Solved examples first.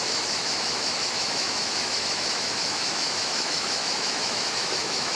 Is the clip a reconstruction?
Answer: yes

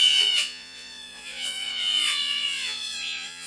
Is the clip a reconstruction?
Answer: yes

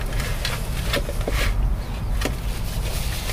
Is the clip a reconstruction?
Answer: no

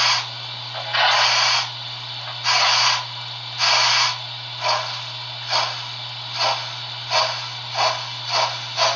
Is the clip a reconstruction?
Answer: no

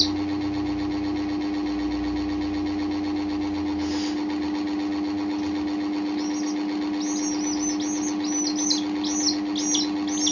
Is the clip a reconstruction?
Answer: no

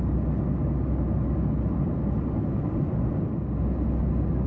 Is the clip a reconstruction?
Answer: no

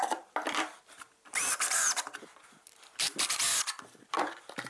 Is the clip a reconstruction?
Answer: yes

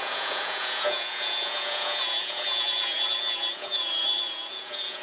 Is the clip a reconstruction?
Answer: yes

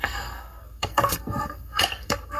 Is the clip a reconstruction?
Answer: yes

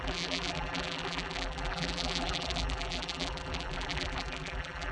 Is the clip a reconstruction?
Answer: yes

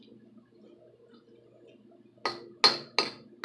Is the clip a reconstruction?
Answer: no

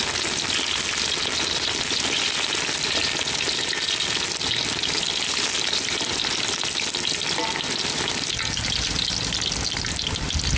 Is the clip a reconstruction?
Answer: no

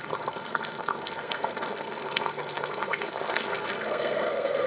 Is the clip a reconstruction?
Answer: yes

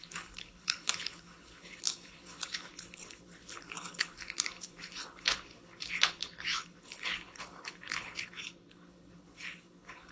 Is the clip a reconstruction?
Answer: yes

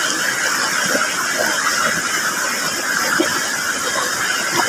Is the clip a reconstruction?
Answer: no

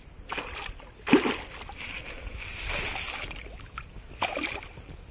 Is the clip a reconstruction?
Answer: no